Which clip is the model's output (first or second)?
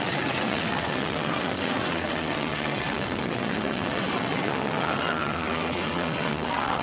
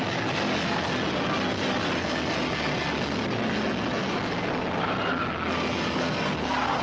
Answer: first